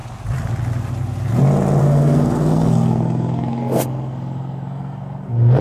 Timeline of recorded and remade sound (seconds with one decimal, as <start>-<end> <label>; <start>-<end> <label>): 0.0-1.8 recorded; 1.8-5.6 remade